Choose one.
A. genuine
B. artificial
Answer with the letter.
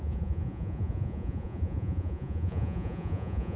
B